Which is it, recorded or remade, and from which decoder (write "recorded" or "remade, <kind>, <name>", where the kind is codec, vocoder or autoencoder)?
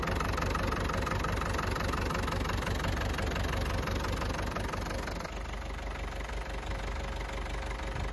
recorded